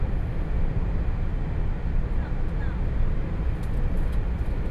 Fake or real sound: real